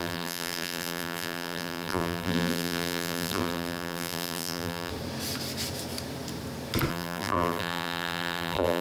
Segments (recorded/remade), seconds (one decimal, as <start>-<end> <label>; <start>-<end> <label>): 0.0-4.9 remade; 4.9-6.9 recorded; 6.9-8.8 remade